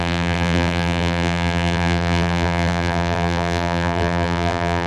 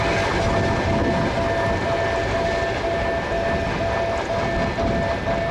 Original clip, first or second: second